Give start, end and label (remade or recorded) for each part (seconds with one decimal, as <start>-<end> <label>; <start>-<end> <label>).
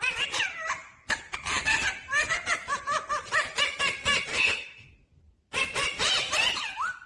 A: 0.0-4.3 recorded; 4.3-4.9 remade; 4.9-7.1 recorded